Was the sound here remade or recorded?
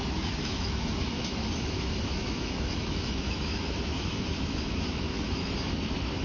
remade